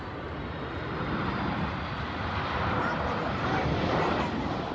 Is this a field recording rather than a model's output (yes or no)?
yes